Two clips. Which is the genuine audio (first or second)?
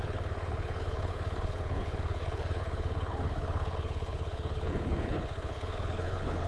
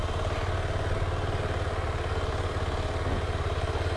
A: second